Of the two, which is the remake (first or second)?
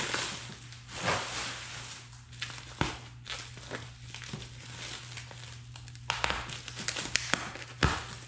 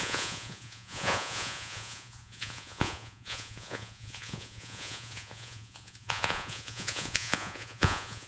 second